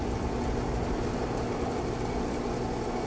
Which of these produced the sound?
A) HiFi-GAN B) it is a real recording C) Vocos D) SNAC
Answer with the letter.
B